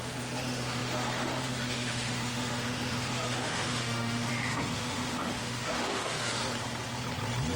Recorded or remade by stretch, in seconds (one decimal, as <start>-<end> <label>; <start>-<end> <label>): 0.0-6.4 remade; 6.4-7.6 recorded